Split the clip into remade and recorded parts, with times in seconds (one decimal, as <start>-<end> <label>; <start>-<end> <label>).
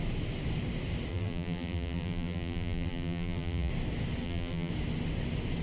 0.0-1.1 recorded; 1.1-3.7 remade; 3.7-4.2 recorded; 4.2-4.7 remade; 4.7-5.6 recorded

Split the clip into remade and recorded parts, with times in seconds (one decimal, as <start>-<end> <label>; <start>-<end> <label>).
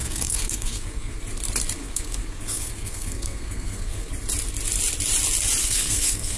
0.0-1.2 remade; 1.2-1.8 recorded; 1.8-4.1 remade; 4.1-5.6 recorded; 5.6-6.4 remade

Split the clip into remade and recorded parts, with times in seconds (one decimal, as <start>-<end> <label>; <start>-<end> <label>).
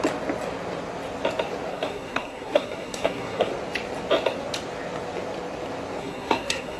0.0-1.7 recorded; 1.7-3.5 remade; 3.5-6.0 recorded; 6.0-6.8 remade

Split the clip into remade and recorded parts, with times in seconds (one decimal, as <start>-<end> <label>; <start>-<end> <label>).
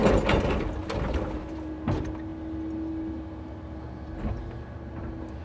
0.0-5.4 recorded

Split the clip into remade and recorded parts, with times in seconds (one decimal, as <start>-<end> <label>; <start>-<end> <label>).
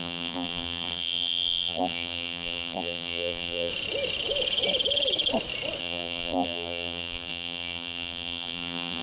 0.0-3.7 remade; 3.7-5.8 recorded; 5.8-9.0 remade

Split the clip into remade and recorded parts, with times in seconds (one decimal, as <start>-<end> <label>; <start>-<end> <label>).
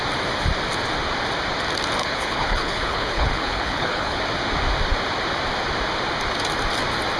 0.0-2.0 recorded; 2.0-4.2 remade; 4.2-7.2 recorded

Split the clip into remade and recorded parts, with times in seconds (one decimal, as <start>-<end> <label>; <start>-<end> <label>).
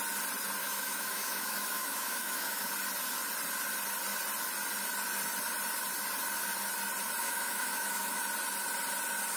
0.0-0.6 recorded; 0.6-2.7 remade; 2.7-7.2 recorded; 7.2-8.2 remade; 8.2-9.4 recorded